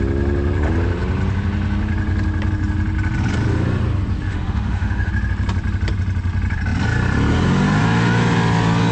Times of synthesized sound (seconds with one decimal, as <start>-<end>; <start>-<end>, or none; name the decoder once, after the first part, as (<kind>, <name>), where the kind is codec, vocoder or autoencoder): 4.3-5.1 (autoencoder, DAC-VAE)